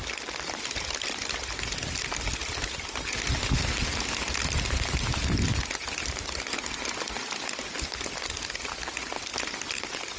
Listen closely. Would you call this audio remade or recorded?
recorded